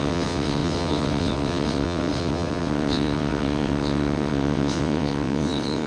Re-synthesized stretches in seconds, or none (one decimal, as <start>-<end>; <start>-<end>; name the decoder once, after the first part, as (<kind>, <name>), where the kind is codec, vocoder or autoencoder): 0.0-5.9 (vocoder, WaveNeXt)